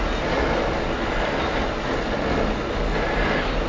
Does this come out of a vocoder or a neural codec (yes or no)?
no